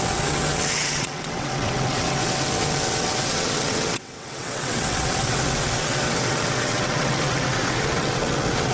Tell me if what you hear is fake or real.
fake